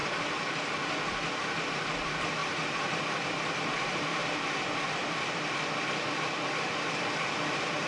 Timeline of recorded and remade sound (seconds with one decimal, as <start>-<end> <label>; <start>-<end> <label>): 0.0-2.4 recorded; 2.4-3.0 remade; 3.0-4.1 recorded; 4.1-6.9 remade; 6.9-7.9 recorded